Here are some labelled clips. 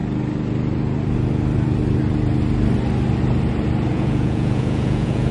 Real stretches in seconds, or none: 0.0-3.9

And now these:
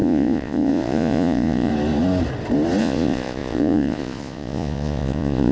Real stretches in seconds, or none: 1.7-2.8